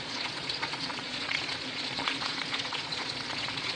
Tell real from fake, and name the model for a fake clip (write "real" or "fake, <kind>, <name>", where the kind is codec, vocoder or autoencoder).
fake, vocoder, Vocos